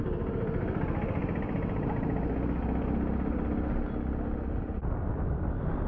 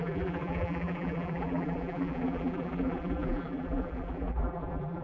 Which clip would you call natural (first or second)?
first